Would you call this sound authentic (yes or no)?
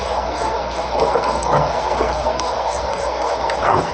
no